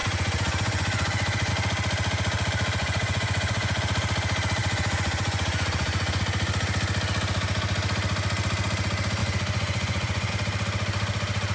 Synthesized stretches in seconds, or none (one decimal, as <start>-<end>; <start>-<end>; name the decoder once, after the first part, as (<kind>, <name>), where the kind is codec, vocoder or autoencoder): 0.0-1.5 (vocoder, Vocos); 2.8-3.8; 4.6-6.2; 9.2-10.3